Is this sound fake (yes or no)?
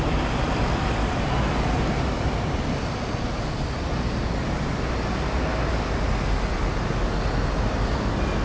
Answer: no